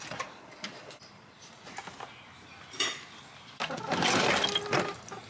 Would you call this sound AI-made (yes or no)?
no